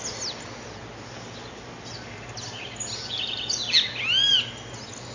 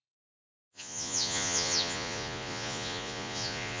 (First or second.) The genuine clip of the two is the first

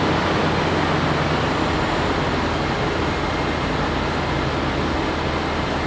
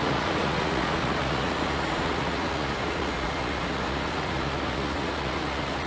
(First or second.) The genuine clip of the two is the first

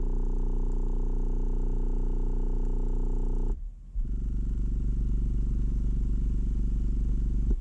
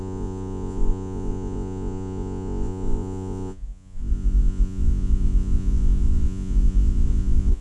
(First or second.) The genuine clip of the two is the first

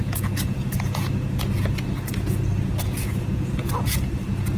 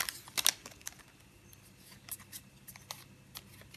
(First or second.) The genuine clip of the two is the second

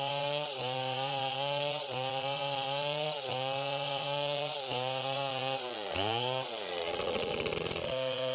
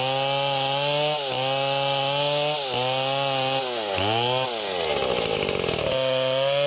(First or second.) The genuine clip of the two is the second